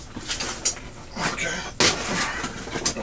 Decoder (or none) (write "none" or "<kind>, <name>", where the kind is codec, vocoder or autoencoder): none